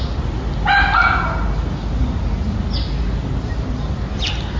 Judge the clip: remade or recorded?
recorded